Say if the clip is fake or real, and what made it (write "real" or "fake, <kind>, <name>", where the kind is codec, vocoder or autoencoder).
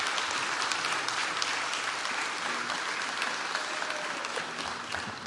real